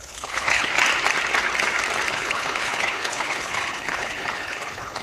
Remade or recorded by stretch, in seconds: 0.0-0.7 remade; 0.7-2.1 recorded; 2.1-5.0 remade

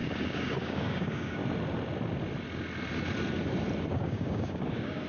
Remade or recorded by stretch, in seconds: 0.0-1.4 remade; 1.4-3.9 recorded; 3.9-5.1 remade

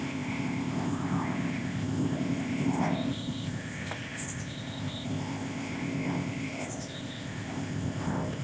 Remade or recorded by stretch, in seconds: 0.0-8.4 remade

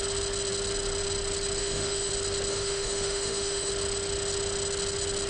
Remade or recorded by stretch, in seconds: 0.0-1.6 recorded; 1.6-2.1 remade; 2.1-2.5 recorded; 2.5-3.7 remade; 3.7-5.3 recorded

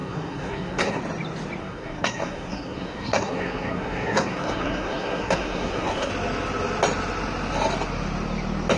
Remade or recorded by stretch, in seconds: 0.0-1.0 remade; 1.0-1.6 recorded; 1.6-6.1 remade; 6.1-8.8 recorded

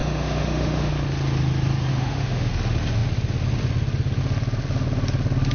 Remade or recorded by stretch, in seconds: 0.0-0.9 remade; 0.9-1.9 recorded; 1.9-2.5 remade; 2.5-5.5 recorded

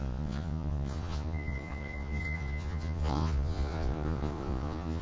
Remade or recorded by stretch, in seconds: 0.0-5.0 remade